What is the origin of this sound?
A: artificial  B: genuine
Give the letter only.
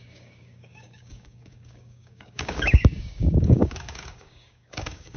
A